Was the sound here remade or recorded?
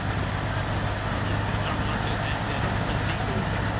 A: recorded